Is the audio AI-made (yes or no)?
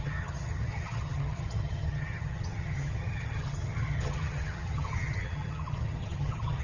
yes